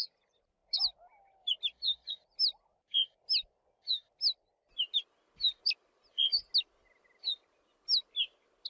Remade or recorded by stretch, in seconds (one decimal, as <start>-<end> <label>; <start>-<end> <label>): 0.0-8.7 recorded